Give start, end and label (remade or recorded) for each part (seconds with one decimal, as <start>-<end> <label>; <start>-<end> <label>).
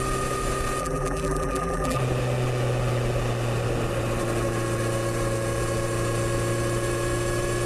0.0-0.8 recorded; 0.8-2.0 remade; 2.0-7.7 recorded